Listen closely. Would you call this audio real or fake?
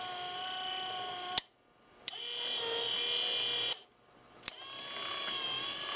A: real